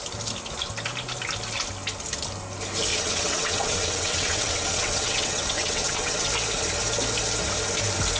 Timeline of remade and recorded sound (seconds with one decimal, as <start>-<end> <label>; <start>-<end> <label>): 0.0-2.9 recorded; 2.9-6.3 remade; 6.3-8.2 recorded